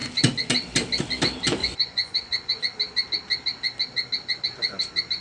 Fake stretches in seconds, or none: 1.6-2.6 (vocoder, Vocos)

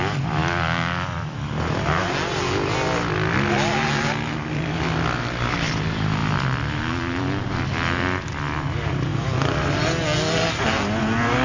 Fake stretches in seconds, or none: none

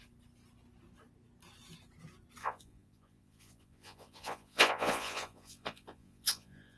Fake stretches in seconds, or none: 2.4-6.8 (vocoder, Vocos)

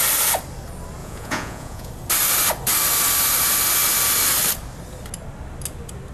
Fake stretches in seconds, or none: 1.0-1.9 (vocoder, Vocos)

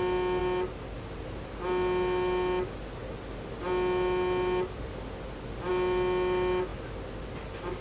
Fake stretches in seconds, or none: none

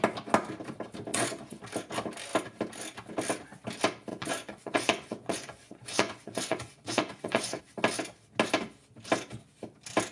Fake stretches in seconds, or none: 1.1-1.6 (vocoder, Vocos); 4.1-7.6

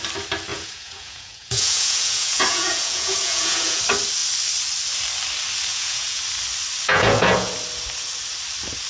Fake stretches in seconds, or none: 0.5-3.8 (vocoder, Vocos); 5.7-6.2; 6.9-7.5